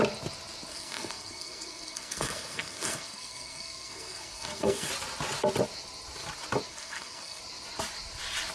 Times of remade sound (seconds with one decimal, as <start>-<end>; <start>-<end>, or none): 0.7-4.9; 6.7-7.4